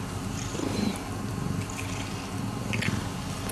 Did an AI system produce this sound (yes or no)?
no